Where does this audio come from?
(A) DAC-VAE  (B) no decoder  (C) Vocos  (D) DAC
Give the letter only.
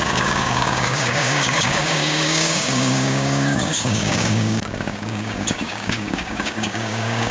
D